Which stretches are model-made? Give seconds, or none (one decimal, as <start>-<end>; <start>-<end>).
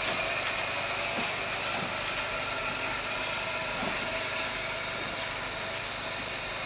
none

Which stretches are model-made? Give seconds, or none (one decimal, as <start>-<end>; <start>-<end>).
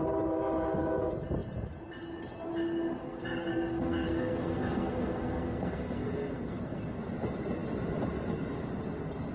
3.0-7.0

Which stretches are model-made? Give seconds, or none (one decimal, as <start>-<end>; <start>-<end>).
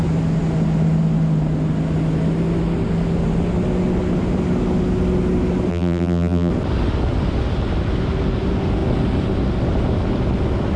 5.7-6.5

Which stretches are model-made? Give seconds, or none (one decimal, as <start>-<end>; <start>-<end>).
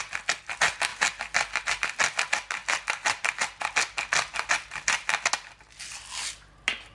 none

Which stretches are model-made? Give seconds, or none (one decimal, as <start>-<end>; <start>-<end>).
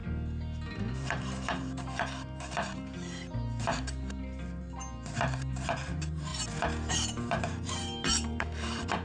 0.0-6.3; 6.9-9.0